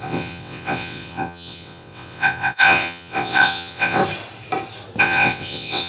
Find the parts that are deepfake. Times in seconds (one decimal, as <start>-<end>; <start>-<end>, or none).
0.0-4.0; 5.0-5.9